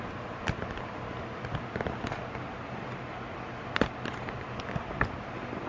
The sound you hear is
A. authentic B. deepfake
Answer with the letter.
A